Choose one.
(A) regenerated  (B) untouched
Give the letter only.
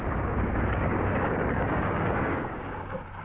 A